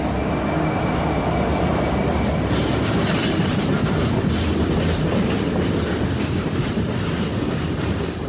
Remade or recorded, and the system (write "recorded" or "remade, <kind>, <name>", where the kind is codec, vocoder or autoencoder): recorded